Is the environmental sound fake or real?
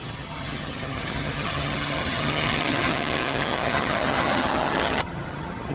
fake